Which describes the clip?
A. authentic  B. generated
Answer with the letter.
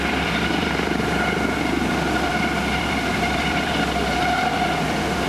B